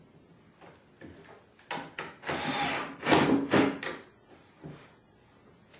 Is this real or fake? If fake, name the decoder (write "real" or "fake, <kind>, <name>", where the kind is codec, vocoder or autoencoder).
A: real